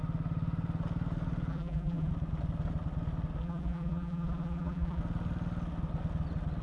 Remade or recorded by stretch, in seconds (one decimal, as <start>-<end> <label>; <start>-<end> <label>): 0.0-1.5 recorded; 1.5-2.1 remade; 2.1-3.4 recorded; 3.4-5.0 remade; 5.0-6.6 recorded